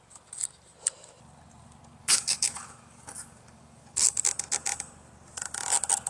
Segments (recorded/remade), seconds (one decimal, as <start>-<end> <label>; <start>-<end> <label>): 0.0-2.0 recorded; 2.0-4.2 remade; 4.2-6.1 recorded